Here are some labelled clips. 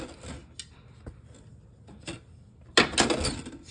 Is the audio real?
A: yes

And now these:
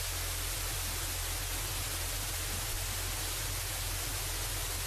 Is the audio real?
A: yes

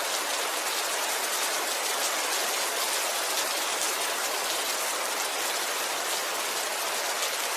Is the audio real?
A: yes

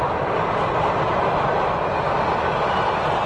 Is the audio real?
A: yes